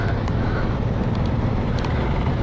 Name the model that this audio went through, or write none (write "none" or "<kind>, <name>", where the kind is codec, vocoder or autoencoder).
none